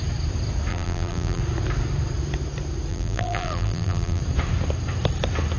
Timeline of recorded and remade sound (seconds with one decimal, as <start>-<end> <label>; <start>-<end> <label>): 0.0-0.7 recorded; 0.7-1.4 remade; 1.4-2.9 recorded; 2.9-4.2 remade; 4.2-5.6 recorded